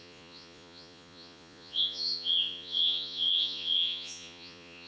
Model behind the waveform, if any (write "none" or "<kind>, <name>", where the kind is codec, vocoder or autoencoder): vocoder, Vocos